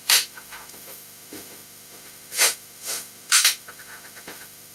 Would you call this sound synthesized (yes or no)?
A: yes